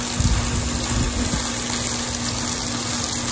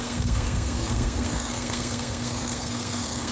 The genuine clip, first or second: first